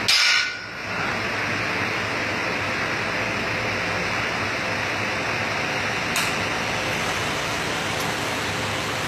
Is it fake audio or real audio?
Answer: real